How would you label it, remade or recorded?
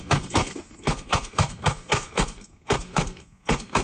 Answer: remade